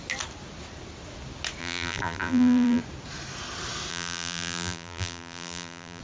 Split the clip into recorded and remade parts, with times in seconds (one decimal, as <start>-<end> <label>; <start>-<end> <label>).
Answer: 0.0-1.6 recorded; 1.6-2.8 remade; 2.8-3.9 recorded; 3.9-6.0 remade